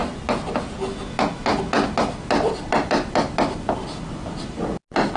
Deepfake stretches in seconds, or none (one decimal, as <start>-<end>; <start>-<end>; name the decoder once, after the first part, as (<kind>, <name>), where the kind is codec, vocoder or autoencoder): none